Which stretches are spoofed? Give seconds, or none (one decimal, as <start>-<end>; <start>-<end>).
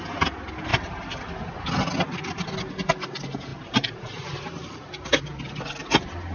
0.7-1.4; 3.5-5.2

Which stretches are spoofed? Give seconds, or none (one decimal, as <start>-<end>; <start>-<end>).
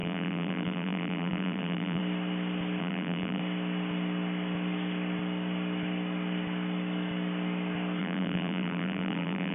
0.0-2.0; 2.8-3.4; 8.0-9.5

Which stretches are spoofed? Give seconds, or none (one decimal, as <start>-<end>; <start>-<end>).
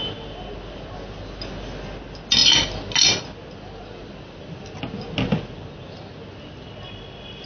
none